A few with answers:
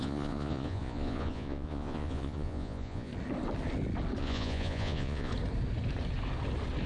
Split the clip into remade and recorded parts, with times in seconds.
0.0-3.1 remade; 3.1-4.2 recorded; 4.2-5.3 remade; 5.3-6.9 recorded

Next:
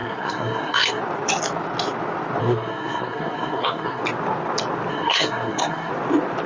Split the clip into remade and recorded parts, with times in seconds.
0.0-1.0 remade; 1.0-2.4 recorded; 2.4-4.0 remade; 4.0-4.9 recorded; 4.9-5.9 remade; 5.9-6.5 recorded

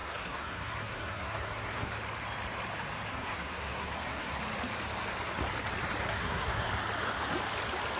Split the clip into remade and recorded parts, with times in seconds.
0.0-1.9 remade; 1.9-3.1 recorded; 3.1-4.4 remade; 4.4-6.0 recorded; 6.0-6.7 remade; 6.7-8.0 recorded

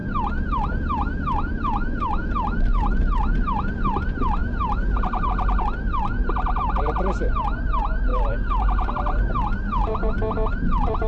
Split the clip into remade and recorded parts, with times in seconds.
0.0-2.7 recorded; 2.7-3.4 remade; 3.4-4.4 recorded; 4.4-5.3 remade; 5.3-8.1 recorded; 8.1-10.1 remade; 10.1-11.1 recorded

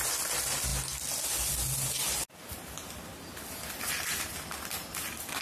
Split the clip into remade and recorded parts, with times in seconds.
0.0-5.4 recorded

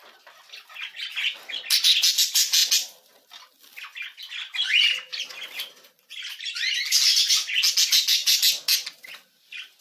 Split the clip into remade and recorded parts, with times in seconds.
0.0-9.8 recorded

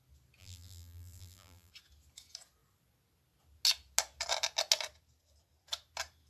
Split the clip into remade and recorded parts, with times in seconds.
0.0-0.4 recorded; 0.4-1.7 remade; 1.7-6.3 recorded